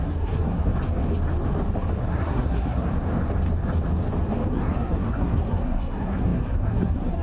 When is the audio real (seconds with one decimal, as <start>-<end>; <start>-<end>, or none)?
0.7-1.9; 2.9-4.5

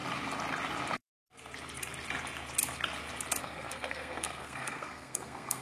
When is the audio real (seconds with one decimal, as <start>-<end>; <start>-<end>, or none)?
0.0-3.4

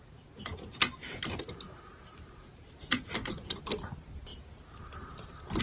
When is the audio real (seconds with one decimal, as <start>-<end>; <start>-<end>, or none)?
0.0-1.0; 3.4-5.6

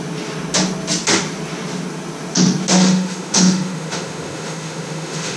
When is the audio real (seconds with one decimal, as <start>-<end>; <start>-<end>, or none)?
0.0-2.7